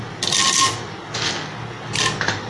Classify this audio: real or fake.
real